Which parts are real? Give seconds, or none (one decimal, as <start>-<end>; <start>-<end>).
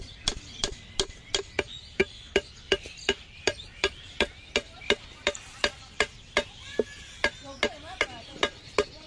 0.0-2.0; 3.9-9.1